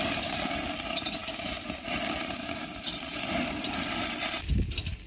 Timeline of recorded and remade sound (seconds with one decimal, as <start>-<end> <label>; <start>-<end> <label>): 0.0-5.1 recorded